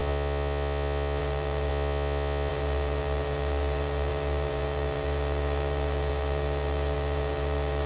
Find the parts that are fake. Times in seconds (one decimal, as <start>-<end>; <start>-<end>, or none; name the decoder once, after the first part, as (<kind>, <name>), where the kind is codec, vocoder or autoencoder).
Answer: 1.2-1.7 (vocoder, BigVGAN v2); 2.5-7.9